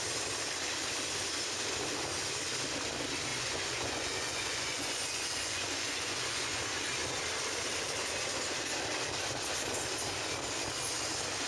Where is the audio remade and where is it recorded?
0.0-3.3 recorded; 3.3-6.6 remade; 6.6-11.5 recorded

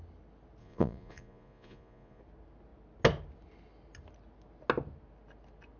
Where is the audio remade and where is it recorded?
0.0-0.6 recorded; 0.6-2.2 remade; 2.2-5.8 recorded

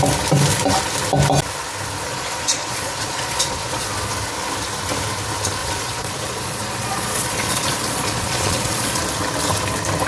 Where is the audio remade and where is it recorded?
0.0-2.1 recorded; 2.1-3.9 remade; 3.9-5.6 recorded; 5.6-9.0 remade; 9.0-10.1 recorded

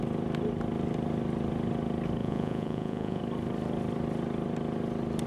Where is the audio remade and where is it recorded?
0.0-2.2 recorded; 2.2-3.2 remade; 3.2-5.3 recorded

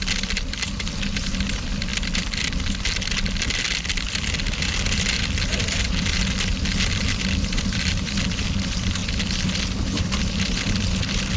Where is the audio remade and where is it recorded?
0.0-1.9 remade; 1.9-3.4 recorded; 3.4-9.0 remade; 9.0-9.8 recorded; 9.8-11.4 remade

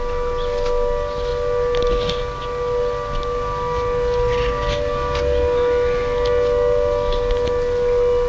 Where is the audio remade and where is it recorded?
0.0-8.3 recorded

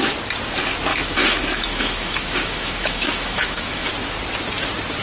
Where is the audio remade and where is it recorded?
0.0-0.9 recorded; 0.9-3.9 remade; 3.9-5.0 recorded

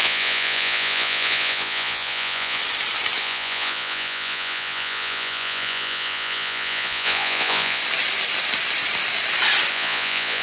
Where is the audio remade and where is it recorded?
0.0-2.6 remade; 2.6-3.2 recorded; 3.2-7.8 remade; 7.8-9.7 recorded; 9.7-10.4 remade